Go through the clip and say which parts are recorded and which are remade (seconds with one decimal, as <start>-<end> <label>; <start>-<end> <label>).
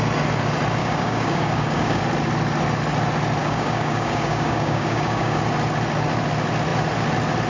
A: 0.0-0.8 recorded; 0.8-2.0 remade; 2.0-3.4 recorded; 3.4-5.4 remade; 5.4-7.5 recorded